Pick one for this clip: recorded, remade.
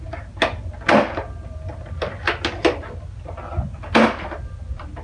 recorded